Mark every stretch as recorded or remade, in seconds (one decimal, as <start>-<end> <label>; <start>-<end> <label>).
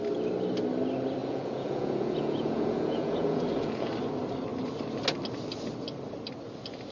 0.0-1.2 recorded; 1.2-3.9 remade; 3.9-6.9 recorded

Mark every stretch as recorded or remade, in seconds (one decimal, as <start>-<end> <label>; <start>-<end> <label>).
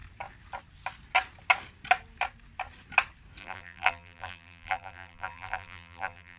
0.0-3.4 recorded; 3.4-6.4 remade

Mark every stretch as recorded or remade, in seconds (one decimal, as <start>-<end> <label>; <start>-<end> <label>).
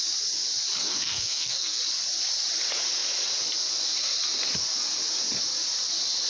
0.0-0.8 recorded; 0.8-1.8 remade; 1.8-6.3 recorded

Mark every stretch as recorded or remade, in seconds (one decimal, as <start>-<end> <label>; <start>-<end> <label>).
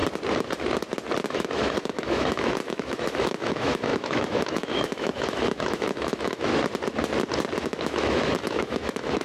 0.0-1.3 recorded; 1.3-6.5 remade; 6.5-7.6 recorded; 7.6-9.2 remade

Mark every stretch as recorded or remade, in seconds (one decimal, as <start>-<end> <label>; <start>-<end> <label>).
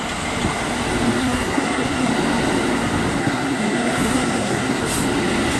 0.0-1.2 recorded; 1.2-2.1 remade; 2.1-3.2 recorded; 3.2-4.8 remade; 4.8-5.6 recorded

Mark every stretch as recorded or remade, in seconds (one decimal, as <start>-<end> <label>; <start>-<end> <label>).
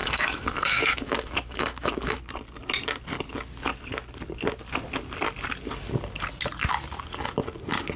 0.0-2.2 remade; 2.2-8.0 recorded